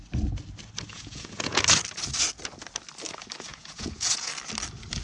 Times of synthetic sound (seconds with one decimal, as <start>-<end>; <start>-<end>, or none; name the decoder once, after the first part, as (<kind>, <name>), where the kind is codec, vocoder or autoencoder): 0.9-1.6 (vocoder, Vocos); 3.5-4.3

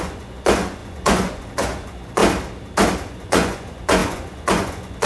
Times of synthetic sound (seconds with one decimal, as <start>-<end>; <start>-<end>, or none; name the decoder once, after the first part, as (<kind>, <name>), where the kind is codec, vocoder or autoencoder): 0.0-2.2 (vocoder, Vocos); 3.1-5.1

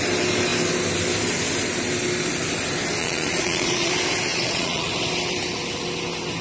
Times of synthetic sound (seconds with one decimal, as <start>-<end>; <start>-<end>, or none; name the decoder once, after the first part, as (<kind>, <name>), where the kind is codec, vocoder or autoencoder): 3.0-3.9 (vocoder, Vocos); 4.3-4.9

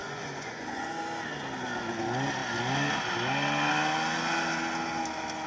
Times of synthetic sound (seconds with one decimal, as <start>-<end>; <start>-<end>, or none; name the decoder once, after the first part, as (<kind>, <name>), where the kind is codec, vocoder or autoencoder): 0.0-1.0 (vocoder, Vocos)

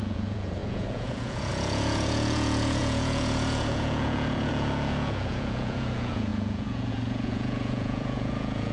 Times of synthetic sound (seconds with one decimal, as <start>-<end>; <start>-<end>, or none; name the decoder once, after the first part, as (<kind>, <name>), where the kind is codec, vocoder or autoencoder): 0.0-8.7 (vocoder, Vocos)